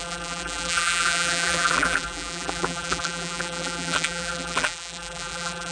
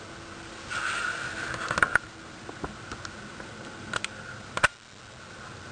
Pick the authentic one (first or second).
second